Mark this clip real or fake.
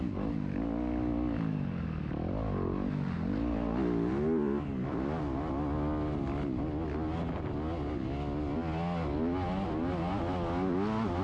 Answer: real